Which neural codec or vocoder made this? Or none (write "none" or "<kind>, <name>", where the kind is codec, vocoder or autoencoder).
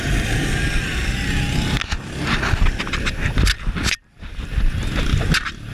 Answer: none